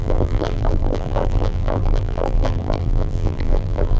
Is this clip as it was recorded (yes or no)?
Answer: no